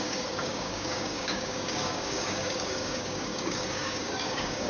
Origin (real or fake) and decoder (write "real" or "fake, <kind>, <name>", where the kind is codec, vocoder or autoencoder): fake, codec, DAC